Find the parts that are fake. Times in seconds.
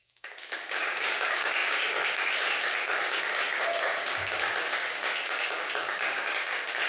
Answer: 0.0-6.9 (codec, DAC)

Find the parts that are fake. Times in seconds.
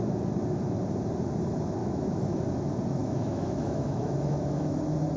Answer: 1.8-2.4 (autoencoder, DAC-VAE); 3.0-4.8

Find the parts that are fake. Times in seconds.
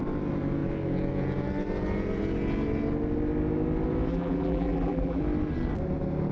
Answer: 4.1-5.2 (vocoder, BigVGAN v2)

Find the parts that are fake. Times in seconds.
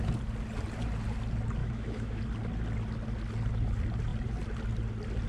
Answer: 1.6-2.2 (autoencoder, DAC-VAE)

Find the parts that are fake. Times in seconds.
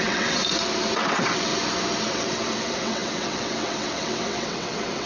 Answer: 0.0-0.4 (vocoder, WaveNeXt); 0.9-1.5; 2.0-5.1